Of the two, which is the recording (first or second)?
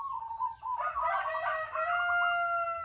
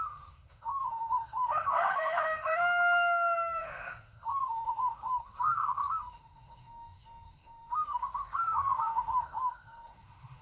first